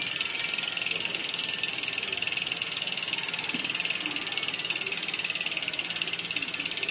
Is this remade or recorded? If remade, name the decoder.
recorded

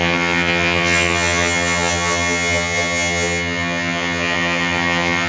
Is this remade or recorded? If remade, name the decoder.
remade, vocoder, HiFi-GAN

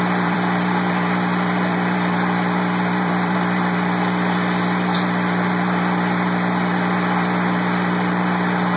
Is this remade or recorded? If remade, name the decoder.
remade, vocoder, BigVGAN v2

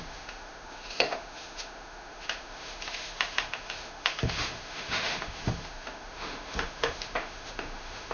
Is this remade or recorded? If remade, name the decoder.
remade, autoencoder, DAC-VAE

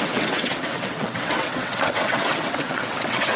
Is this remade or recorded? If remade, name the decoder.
remade, vocoder, WaveNeXt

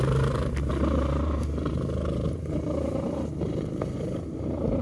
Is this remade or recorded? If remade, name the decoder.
remade, vocoder, BigVGAN v2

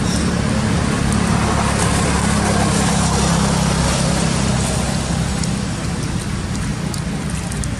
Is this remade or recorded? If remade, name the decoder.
recorded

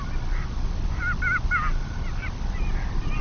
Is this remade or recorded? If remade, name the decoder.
recorded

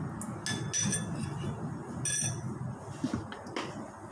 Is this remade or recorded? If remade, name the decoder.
recorded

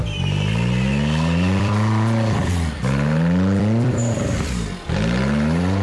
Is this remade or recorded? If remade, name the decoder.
remade, vocoder, BigVGAN v2